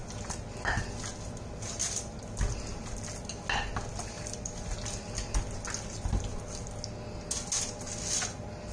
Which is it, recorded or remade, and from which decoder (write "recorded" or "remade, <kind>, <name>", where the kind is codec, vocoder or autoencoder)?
recorded